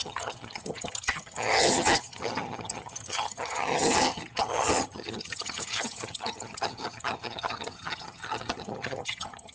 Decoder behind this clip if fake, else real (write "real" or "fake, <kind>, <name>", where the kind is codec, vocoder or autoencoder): fake, vocoder, HiFi-GAN